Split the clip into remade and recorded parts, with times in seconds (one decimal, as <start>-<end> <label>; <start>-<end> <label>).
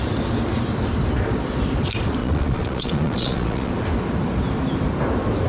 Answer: 0.0-2.2 recorded; 2.2-3.7 remade; 3.7-5.5 recorded